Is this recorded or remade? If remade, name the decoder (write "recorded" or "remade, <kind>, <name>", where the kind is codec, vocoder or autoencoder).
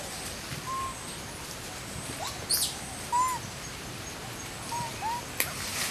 recorded